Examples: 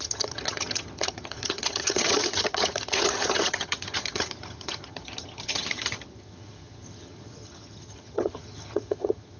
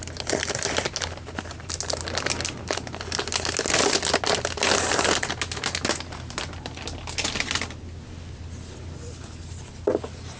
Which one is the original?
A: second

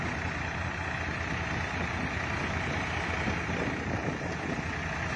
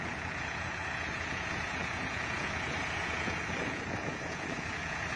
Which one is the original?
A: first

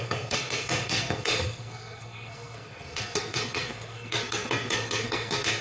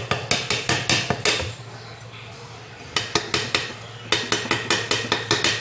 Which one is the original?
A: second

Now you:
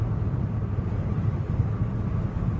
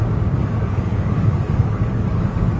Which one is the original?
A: first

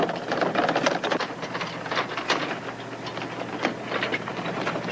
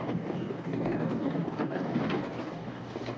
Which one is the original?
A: first